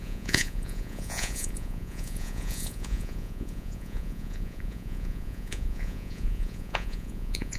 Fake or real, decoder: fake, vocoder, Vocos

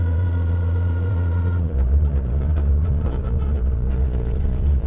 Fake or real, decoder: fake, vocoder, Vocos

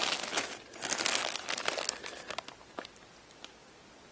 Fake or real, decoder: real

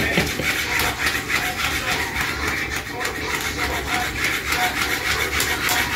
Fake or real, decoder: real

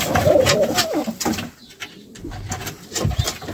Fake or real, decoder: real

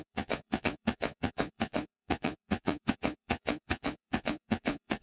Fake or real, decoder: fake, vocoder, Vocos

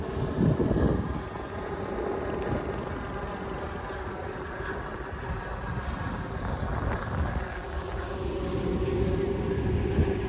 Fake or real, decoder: real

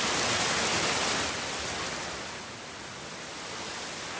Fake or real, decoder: real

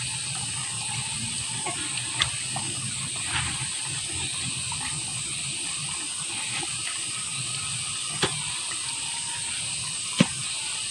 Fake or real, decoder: real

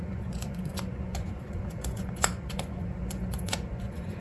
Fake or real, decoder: fake, vocoder, Vocos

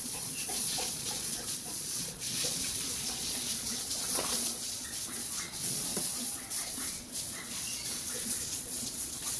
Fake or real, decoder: fake, vocoder, Vocos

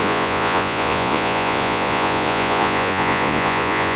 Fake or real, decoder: fake, vocoder, Vocos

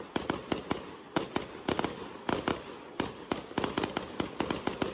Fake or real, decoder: real